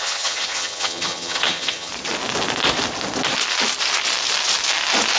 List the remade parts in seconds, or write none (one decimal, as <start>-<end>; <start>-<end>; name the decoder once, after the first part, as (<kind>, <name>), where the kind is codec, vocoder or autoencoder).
0.0-1.9 (vocoder, HiFi-GAN)